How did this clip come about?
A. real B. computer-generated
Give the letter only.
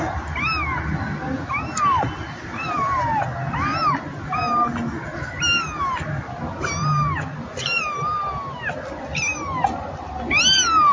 A